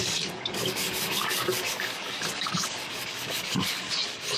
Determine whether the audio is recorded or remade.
remade